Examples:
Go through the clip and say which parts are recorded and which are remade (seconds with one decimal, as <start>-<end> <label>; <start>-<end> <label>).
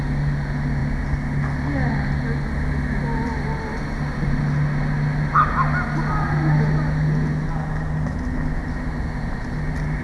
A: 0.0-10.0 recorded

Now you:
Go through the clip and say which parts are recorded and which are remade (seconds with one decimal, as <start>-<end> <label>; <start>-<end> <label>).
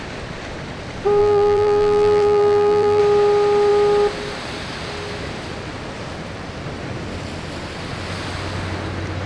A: 0.0-1.2 recorded; 1.2-3.0 remade; 3.0-9.3 recorded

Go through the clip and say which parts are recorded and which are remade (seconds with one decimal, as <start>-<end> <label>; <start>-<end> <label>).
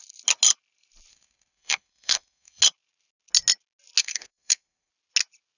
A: 0.0-1.1 recorded; 1.1-2.6 remade; 2.6-4.0 recorded; 4.0-4.9 remade; 4.9-5.6 recorded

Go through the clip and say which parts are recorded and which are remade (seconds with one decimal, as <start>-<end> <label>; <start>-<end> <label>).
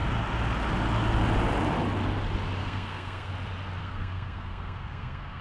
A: 0.0-2.6 recorded; 2.6-3.3 remade; 3.3-3.8 recorded; 3.8-5.4 remade